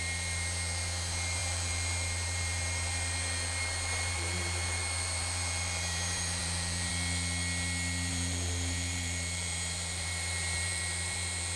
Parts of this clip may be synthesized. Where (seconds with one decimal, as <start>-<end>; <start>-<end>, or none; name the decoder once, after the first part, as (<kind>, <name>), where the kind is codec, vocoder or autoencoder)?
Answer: 0.0-6.9 (vocoder, BigVGAN v2); 8.1-11.6